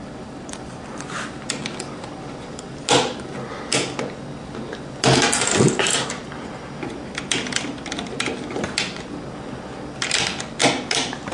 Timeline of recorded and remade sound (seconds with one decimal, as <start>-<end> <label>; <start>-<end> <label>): 0.0-11.3 recorded